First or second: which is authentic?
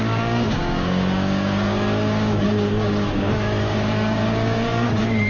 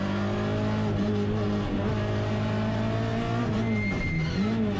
second